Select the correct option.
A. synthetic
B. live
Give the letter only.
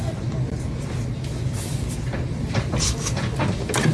B